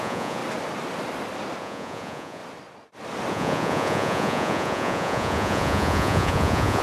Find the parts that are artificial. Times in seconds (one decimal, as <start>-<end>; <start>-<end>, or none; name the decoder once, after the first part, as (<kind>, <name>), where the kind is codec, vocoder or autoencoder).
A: 0.0-0.4 (vocoder, Vocos); 1.6-2.4; 3.3-6.8